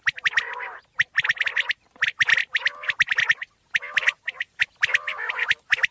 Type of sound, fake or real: real